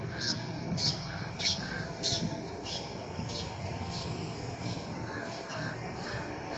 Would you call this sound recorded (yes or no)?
no